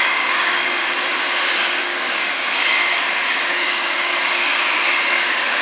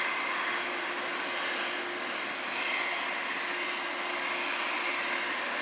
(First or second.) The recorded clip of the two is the second